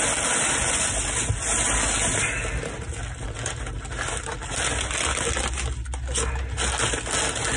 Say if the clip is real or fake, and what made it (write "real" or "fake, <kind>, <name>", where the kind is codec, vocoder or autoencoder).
real